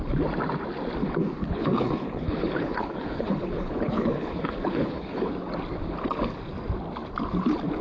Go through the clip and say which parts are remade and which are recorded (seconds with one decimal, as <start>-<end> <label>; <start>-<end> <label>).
0.0-1.0 recorded; 1.0-5.3 remade; 5.3-7.8 recorded